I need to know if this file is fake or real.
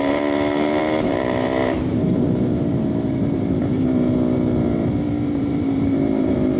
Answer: fake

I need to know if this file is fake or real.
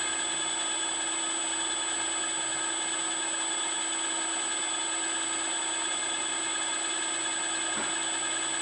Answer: real